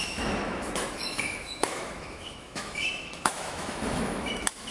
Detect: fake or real fake